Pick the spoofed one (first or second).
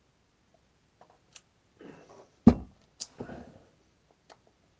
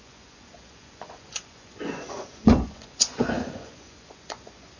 second